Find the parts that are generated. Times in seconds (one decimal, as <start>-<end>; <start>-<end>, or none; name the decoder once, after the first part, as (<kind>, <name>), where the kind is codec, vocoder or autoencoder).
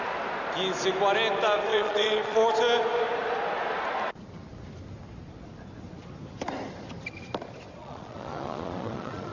1.7-2.5 (vocoder, Vocos); 7.8-9.3